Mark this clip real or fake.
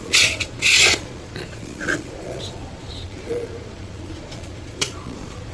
fake